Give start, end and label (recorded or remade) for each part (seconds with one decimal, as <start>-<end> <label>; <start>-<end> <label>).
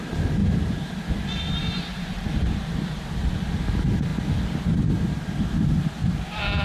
0.0-0.4 recorded; 0.4-3.1 remade; 3.1-6.6 recorded